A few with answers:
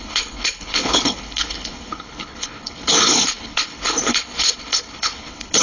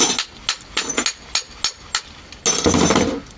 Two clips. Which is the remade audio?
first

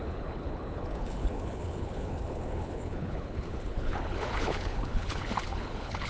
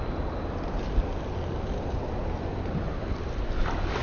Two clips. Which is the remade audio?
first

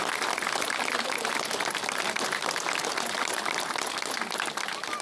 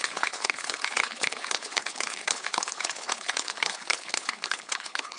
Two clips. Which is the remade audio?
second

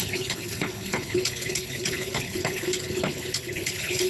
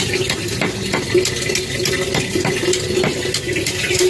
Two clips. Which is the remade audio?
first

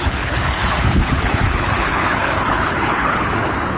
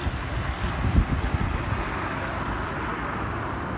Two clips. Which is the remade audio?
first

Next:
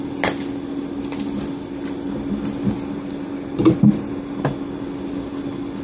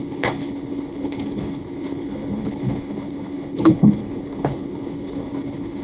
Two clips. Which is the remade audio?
second